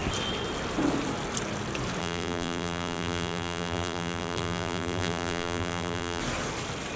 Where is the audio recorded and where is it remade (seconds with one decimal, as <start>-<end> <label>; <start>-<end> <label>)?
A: 0.0-2.0 recorded; 2.0-6.2 remade; 6.2-7.0 recorded